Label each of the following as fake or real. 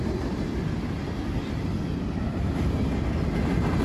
real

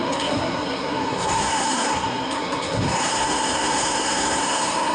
fake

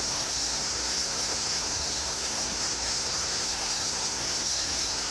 fake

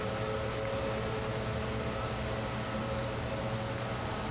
real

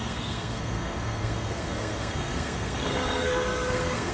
fake